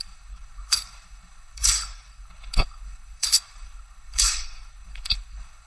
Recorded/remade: remade